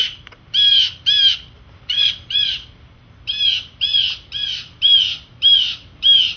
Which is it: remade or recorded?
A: remade